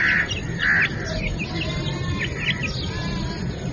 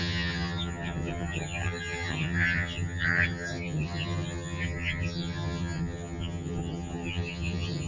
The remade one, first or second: second